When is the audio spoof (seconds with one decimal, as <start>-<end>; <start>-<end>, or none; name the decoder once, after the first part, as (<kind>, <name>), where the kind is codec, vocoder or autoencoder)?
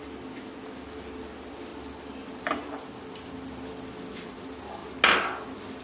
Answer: none